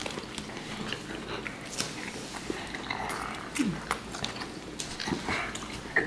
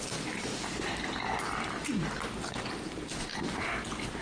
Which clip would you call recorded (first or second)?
first